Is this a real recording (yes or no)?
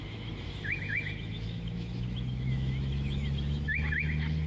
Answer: no